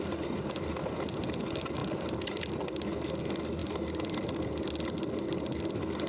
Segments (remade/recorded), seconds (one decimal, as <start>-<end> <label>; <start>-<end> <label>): 0.0-1.8 recorded; 1.8-2.6 remade; 2.6-6.1 recorded